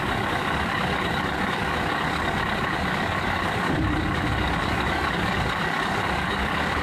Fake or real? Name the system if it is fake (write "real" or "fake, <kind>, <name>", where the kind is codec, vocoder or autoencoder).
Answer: fake, codec, DAC